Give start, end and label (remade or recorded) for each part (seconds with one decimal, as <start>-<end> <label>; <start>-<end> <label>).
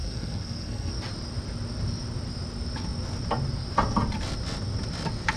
0.0-0.9 remade; 0.9-5.4 recorded